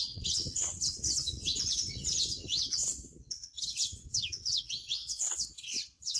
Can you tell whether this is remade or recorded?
remade